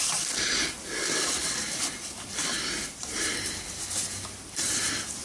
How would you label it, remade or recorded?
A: remade